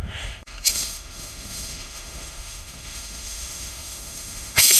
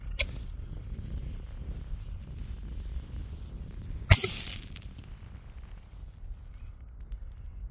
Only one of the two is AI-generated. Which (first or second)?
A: first